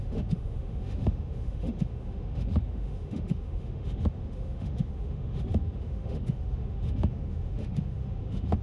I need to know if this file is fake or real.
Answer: fake